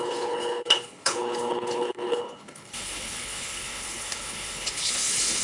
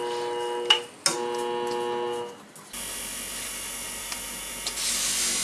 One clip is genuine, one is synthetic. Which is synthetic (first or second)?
first